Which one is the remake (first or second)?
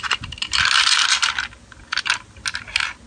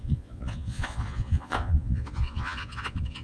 second